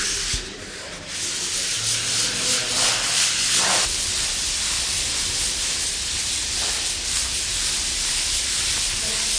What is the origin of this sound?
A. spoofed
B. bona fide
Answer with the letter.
B